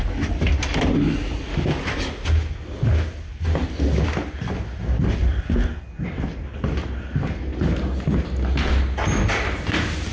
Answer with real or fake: real